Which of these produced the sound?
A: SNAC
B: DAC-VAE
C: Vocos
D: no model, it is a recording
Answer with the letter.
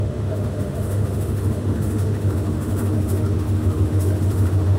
B